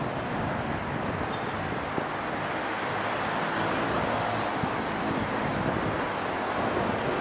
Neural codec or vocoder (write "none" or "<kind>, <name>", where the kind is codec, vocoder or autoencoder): none